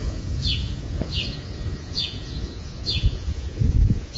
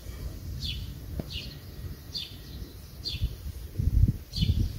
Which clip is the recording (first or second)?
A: second